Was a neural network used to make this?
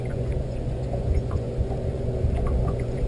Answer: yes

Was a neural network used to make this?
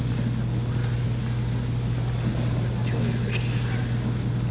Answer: no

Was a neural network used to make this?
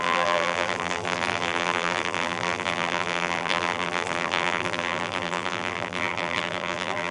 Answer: yes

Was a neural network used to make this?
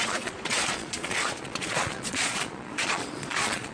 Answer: yes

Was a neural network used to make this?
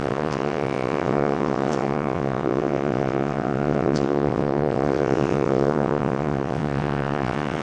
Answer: yes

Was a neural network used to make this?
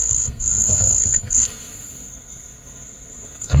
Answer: yes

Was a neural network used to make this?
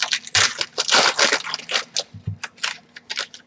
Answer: no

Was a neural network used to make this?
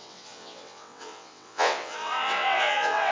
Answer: yes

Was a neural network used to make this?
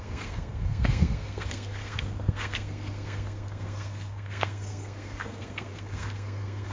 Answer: yes